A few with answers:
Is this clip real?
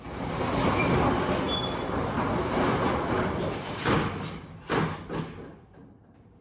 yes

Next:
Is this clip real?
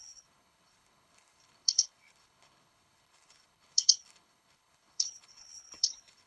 no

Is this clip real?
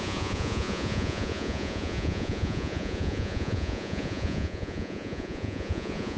no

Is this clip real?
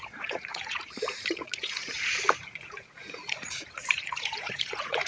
no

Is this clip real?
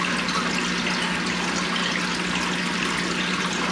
yes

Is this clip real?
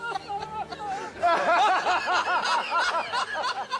yes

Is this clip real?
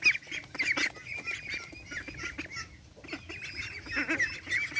yes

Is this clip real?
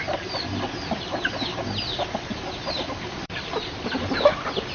yes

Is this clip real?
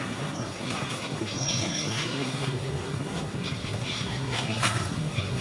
no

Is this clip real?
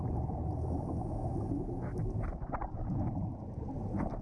yes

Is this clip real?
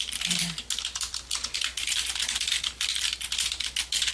yes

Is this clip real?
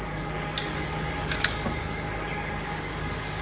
no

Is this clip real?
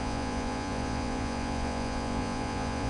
no